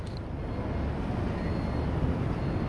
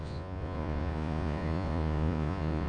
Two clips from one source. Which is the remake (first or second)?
second